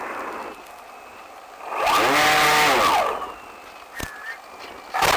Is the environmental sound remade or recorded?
recorded